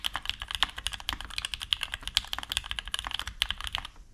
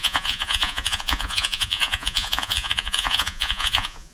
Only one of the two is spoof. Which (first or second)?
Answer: second